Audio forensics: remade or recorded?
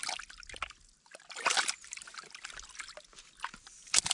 recorded